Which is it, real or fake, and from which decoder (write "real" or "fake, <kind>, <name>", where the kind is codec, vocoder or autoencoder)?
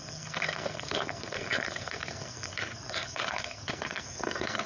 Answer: fake, codec, SNAC